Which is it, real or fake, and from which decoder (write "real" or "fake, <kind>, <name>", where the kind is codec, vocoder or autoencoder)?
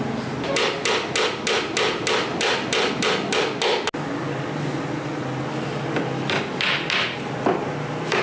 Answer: real